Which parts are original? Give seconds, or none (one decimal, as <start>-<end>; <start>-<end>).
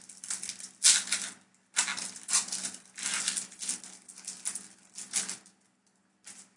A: 0.0-6.6